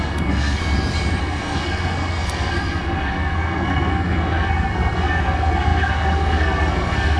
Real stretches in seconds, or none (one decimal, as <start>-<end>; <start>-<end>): 0.6-1.2